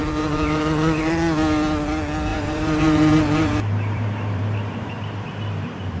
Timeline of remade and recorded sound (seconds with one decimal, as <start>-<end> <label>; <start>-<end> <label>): 0.0-0.6 remade; 0.6-2.3 recorded; 2.3-4.9 remade; 4.9-6.0 recorded